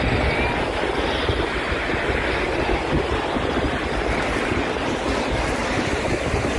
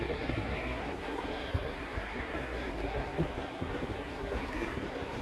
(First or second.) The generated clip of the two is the second